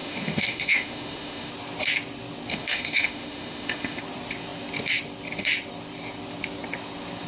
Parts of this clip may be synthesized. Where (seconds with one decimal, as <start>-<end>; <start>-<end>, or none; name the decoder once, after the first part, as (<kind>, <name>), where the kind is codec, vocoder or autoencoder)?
0.0-1.5 (autoencoder, DAC-VAE); 2.5-4.0